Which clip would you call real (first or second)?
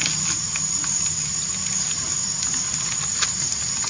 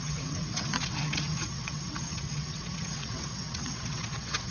first